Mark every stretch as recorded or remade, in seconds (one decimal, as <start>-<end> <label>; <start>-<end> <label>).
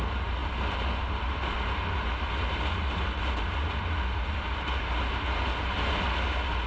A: 0.0-6.7 recorded